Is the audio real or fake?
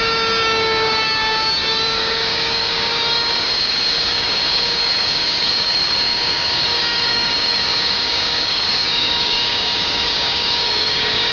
fake